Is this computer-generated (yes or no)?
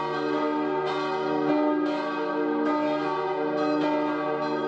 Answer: no